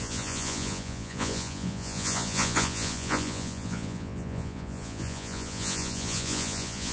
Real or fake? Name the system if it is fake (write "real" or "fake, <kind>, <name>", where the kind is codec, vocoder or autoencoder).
fake, vocoder, Vocos